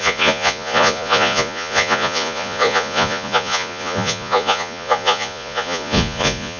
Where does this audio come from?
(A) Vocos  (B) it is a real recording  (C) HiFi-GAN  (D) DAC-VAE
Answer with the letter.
A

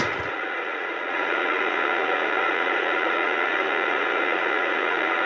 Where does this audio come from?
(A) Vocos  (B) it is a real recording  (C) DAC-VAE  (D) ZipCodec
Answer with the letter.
A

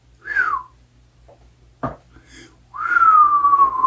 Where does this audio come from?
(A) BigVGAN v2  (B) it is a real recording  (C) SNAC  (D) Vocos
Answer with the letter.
B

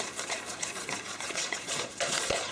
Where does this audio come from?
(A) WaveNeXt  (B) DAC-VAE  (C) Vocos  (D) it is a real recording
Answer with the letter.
C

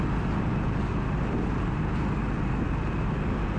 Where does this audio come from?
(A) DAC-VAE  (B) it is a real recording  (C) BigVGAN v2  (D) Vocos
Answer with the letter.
B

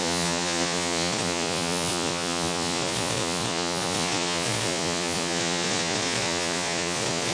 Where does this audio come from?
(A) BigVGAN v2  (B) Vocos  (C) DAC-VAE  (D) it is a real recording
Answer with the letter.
B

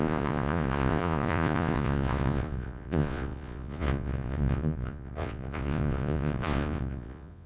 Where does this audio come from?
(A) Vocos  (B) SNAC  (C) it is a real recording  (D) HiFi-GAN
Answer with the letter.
A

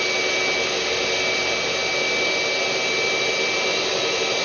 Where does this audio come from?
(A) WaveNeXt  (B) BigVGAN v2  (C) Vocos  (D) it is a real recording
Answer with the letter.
D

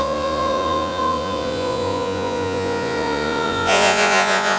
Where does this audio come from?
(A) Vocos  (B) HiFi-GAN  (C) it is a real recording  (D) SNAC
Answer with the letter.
A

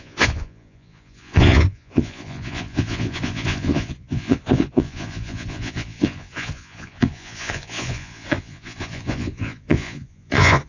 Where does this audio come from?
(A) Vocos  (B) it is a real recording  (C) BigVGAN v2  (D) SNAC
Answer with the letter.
A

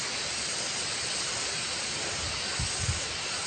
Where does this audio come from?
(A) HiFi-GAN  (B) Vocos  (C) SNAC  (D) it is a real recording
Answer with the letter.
D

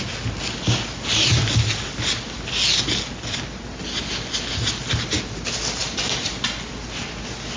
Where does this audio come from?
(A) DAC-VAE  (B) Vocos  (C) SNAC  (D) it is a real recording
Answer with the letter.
D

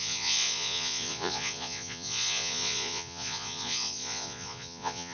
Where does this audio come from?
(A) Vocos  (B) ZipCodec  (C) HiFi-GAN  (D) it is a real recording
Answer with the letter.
A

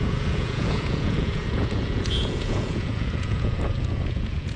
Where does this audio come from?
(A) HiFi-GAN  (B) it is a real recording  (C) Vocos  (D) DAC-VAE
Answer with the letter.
C